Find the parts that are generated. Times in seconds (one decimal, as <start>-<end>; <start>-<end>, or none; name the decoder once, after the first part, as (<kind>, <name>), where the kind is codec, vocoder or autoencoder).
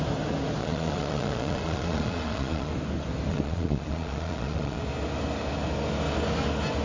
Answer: 0.6-2.7 (vocoder, Vocos); 3.3-4.8